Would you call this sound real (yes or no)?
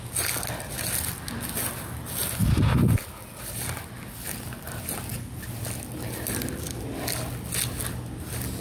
yes